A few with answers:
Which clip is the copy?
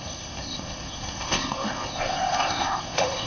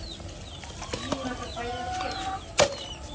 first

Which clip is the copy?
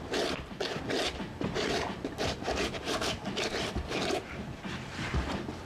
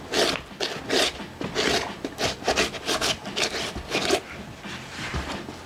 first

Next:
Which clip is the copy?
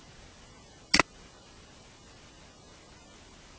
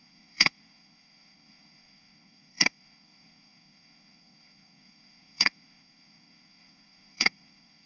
second